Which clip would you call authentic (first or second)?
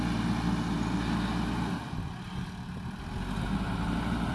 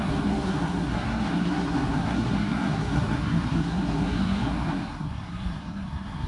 first